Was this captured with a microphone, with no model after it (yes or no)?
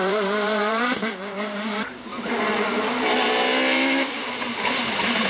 no